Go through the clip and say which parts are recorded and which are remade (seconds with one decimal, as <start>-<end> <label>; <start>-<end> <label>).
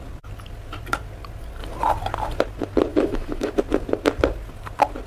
0.0-2.9 recorded; 2.9-3.5 remade; 3.5-5.1 recorded